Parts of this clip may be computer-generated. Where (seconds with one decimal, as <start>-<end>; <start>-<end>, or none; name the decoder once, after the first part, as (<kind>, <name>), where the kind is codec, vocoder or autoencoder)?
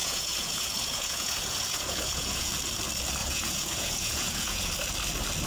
0.0-2.5 (vocoder, Vocos); 3.2-4.7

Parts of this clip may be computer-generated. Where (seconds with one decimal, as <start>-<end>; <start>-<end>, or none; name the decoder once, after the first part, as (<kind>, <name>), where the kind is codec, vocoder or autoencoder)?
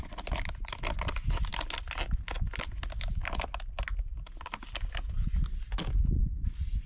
none